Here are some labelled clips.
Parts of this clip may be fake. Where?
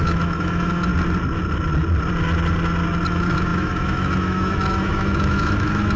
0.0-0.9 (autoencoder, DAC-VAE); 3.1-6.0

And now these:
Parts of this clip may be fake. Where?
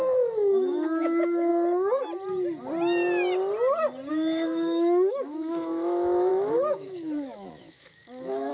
0.0-1.5 (autoencoder, DAC-VAE); 4.1-8.5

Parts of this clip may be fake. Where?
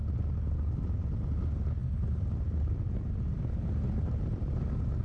none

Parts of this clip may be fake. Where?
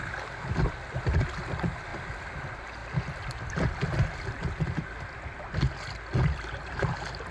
none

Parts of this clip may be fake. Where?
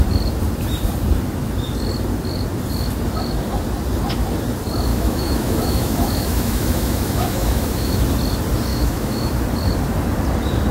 4.9-8.0 (autoencoder, DAC-VAE); 8.7-9.4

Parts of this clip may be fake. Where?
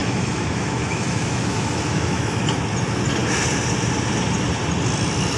0.0-2.4 (autoencoder, DAC-VAE)